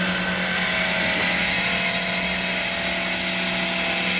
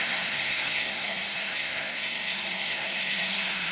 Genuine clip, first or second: first